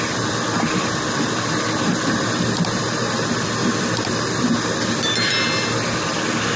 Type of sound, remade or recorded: recorded